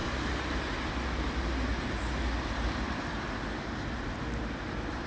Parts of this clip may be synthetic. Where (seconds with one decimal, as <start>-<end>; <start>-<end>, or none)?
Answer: 1.7-5.1